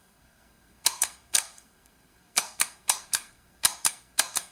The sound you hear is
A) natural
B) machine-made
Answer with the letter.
B